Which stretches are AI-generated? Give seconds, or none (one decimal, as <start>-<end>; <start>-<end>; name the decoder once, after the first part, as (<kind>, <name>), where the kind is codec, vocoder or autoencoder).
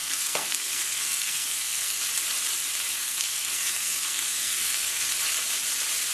0.0-2.0 (codec, SNAC); 2.9-5.1